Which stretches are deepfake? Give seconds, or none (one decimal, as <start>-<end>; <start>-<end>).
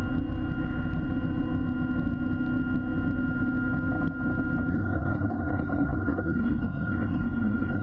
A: 4.7-7.8